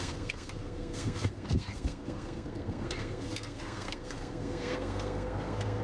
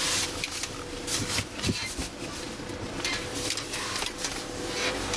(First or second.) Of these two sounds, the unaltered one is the second